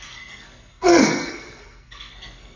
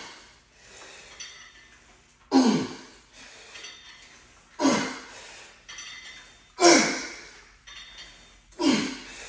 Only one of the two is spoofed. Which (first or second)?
first